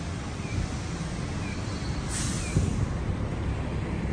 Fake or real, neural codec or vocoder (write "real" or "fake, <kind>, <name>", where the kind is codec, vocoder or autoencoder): real